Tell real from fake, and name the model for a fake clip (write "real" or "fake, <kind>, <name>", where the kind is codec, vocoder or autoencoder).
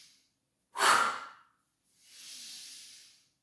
real